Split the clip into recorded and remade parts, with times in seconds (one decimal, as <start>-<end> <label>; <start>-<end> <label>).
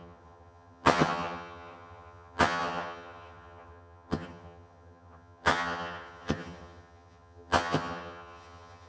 0.0-8.9 remade